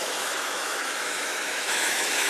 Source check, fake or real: fake